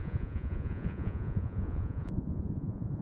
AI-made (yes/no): yes